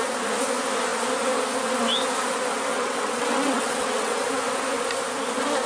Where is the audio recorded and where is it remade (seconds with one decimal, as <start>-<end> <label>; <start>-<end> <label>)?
0.0-2.7 recorded; 2.7-4.2 remade; 4.2-5.7 recorded